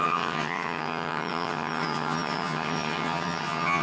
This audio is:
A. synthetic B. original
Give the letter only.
A